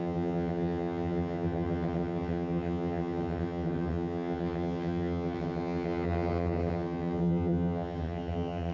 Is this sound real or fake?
fake